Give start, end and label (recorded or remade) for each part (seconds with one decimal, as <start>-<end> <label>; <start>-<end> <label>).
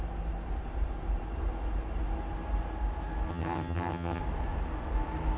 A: 0.0-3.3 recorded; 3.3-4.2 remade; 4.2-5.4 recorded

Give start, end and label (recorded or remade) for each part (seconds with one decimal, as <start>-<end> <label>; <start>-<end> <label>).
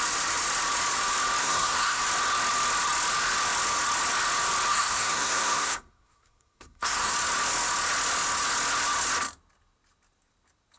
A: 0.0-1.4 recorded; 1.4-2.0 remade; 2.0-4.7 recorded; 4.7-7.1 remade; 7.1-10.8 recorded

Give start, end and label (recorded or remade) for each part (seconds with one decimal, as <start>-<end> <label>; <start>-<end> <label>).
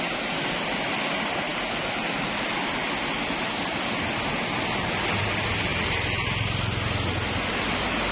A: 0.0-8.1 recorded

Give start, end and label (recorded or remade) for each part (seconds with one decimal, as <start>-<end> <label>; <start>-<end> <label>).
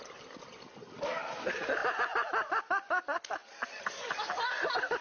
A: 0.0-5.0 recorded